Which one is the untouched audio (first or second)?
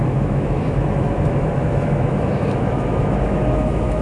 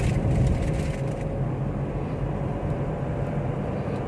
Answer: second